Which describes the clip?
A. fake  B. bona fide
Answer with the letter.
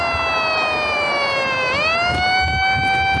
B